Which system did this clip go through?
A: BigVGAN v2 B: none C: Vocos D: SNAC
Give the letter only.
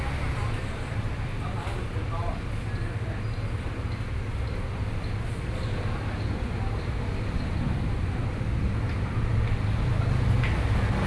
B